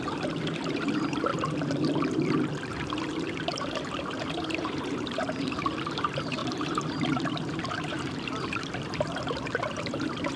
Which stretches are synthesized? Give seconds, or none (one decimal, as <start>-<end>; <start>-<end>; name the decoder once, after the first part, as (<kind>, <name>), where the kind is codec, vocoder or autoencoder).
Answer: 0.0-1.3 (vocoder, BigVGAN v2); 3.6-10.4